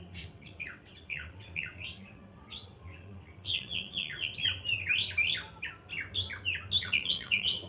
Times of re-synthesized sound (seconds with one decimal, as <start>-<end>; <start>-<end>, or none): 0.0-4.3; 6.8-7.7